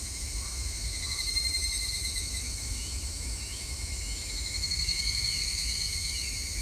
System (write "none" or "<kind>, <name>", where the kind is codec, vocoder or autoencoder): autoencoder, DAC-VAE